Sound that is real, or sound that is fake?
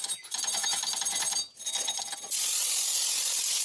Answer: real